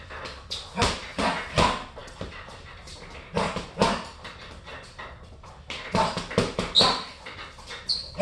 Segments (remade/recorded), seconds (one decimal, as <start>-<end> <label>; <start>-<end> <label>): 0.0-8.2 recorded